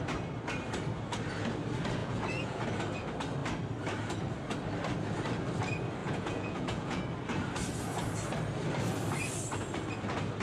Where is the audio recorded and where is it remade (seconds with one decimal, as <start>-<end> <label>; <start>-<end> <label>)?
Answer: 0.0-2.0 recorded; 2.0-2.6 remade; 2.6-6.0 recorded; 6.0-7.0 remade; 7.0-10.4 recorded